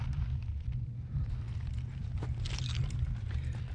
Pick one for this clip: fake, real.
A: real